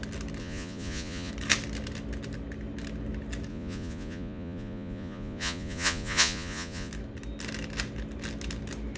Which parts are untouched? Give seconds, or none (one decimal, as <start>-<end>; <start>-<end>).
0.0-0.4; 1.3-3.5; 6.9-9.0